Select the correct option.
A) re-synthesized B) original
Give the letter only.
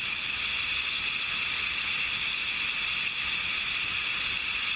B